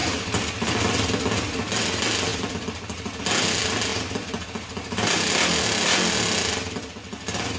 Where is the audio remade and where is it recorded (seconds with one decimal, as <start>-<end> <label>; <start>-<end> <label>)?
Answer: 0.0-0.7 remade; 0.7-7.6 recorded

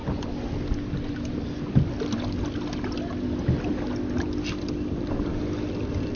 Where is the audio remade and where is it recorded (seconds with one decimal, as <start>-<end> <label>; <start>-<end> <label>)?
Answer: 0.0-6.2 recorded

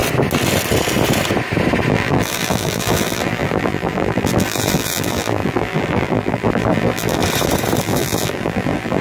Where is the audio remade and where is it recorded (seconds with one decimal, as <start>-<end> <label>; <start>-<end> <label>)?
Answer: 0.0-1.9 recorded; 1.9-7.2 remade; 7.2-7.8 recorded; 7.8-9.0 remade

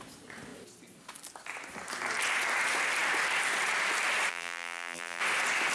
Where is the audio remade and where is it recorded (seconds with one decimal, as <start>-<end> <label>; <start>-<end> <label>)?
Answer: 0.0-4.3 recorded; 4.3-5.2 remade; 5.2-5.7 recorded

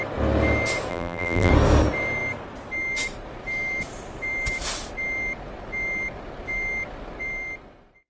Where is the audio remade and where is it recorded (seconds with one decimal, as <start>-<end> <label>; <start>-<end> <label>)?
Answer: 0.0-0.9 recorded; 0.9-1.5 remade; 1.5-8.1 recorded

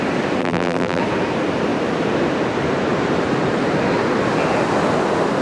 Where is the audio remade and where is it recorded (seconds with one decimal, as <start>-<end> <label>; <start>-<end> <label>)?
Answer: 0.0-0.4 recorded; 0.4-1.0 remade; 1.0-5.4 recorded